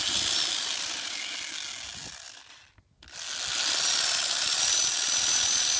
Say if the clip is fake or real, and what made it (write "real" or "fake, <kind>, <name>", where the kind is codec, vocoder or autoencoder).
real